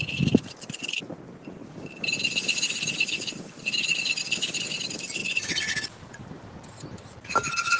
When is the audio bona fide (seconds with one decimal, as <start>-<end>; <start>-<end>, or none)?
0.0-5.2; 5.7-7.8